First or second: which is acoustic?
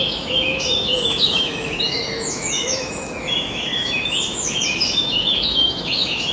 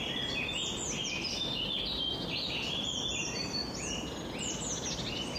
second